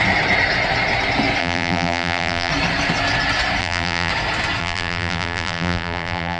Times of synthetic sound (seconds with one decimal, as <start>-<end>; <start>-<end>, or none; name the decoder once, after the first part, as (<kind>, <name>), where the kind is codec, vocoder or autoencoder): 1.4-2.5 (vocoder, BigVGAN v2); 3.6-4.1; 4.6-6.4